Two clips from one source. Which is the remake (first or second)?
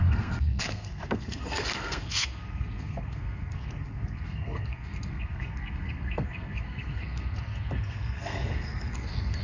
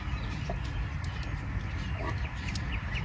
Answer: first